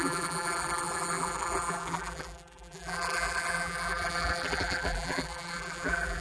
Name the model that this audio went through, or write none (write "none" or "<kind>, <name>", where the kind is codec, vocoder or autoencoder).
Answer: vocoder, BigVGAN v2